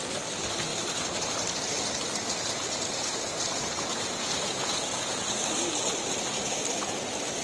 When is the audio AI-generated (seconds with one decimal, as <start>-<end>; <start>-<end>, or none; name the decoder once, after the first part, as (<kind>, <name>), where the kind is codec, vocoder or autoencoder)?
3.9-5.4 (vocoder, Vocos)